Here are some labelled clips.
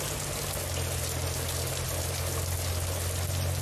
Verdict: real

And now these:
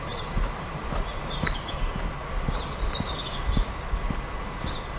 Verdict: real